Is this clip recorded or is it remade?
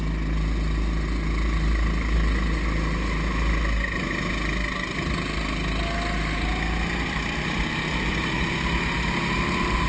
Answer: recorded